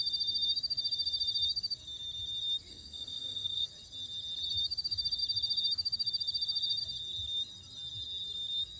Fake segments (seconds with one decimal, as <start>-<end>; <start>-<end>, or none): 2.7-3.7